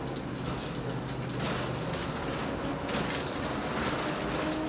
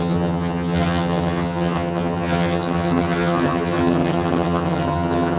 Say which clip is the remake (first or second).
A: second